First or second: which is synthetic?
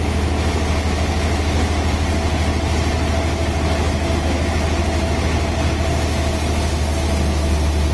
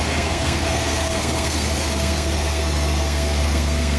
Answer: second